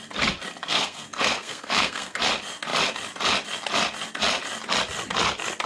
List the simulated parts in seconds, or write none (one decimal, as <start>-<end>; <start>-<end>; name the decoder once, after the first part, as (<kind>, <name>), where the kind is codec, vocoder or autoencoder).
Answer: 0.6-2.2 (codec, SNAC)